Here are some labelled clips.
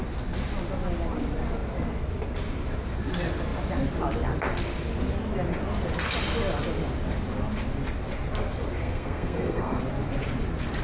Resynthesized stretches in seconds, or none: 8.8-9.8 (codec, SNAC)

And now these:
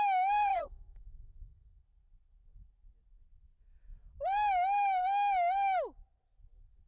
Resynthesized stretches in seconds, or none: 0.5-1.8 (codec, SNAC)